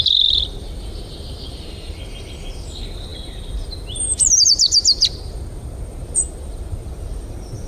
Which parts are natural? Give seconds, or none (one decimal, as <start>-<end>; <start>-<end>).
none